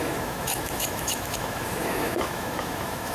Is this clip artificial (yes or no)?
yes